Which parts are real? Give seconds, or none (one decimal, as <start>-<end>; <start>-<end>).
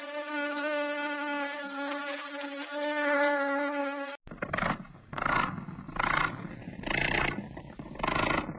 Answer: 0.0-8.6